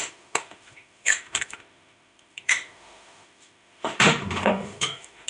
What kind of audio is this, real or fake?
fake